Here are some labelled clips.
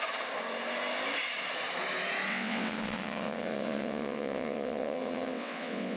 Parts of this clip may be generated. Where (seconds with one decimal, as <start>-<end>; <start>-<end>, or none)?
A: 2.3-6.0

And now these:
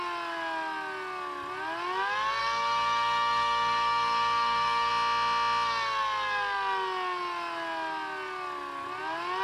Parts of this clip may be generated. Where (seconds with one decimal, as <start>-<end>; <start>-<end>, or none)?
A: 2.4-4.9

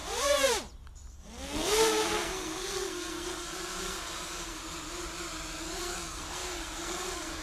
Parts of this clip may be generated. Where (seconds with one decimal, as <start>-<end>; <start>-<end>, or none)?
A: 1.1-4.6; 5.8-7.4